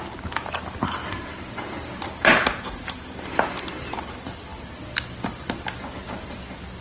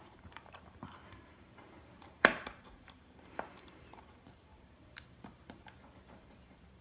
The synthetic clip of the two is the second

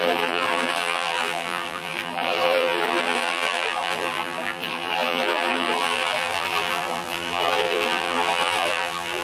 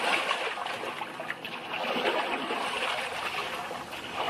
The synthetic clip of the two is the first